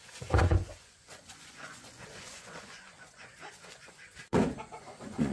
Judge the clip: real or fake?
fake